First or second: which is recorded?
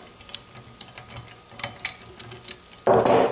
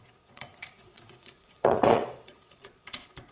first